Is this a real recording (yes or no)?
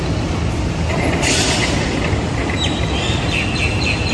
yes